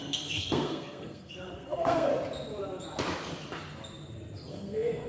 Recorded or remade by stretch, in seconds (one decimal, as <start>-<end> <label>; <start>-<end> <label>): 0.0-2.1 remade; 2.1-4.5 recorded; 4.5-5.1 remade